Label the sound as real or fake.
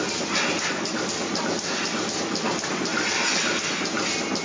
real